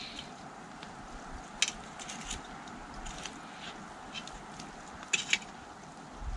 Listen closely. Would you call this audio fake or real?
real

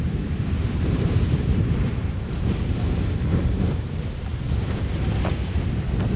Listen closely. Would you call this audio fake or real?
fake